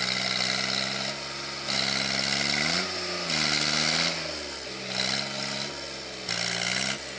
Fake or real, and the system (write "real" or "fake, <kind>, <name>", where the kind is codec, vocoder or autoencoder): real